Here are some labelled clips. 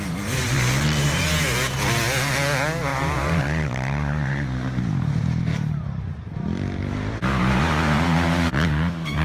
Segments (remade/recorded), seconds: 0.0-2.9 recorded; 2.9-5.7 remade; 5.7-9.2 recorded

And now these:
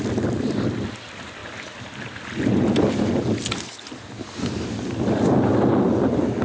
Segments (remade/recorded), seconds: 0.0-6.4 recorded

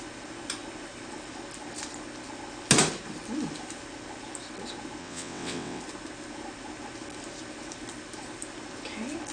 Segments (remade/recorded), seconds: 0.0-5.0 recorded; 5.0-5.8 remade; 5.8-9.3 recorded

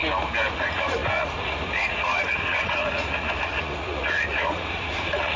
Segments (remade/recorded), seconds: 0.0-0.5 recorded; 0.5-5.4 remade

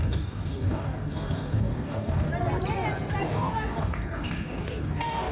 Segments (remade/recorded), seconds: 0.0-2.3 remade; 2.3-3.2 recorded; 3.2-5.3 remade

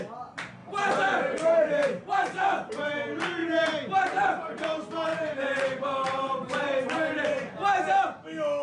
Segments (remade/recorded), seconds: 0.0-0.6 recorded; 0.6-2.7 remade; 2.7-5.1 recorded; 5.1-6.8 remade; 6.8-8.6 recorded

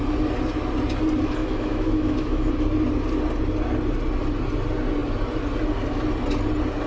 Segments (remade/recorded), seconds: 0.0-1.4 recorded; 1.4-2.5 remade; 2.5-6.9 recorded